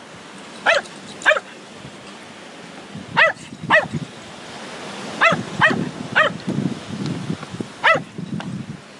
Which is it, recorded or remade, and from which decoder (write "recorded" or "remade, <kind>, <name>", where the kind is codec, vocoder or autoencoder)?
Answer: recorded